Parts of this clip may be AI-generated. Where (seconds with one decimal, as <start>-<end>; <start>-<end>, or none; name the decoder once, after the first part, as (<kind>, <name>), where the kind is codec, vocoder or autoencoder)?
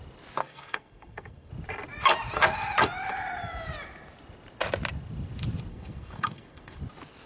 0.4-1.5 (codec, SNAC); 5.7-6.8